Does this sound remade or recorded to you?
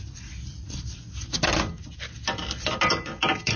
recorded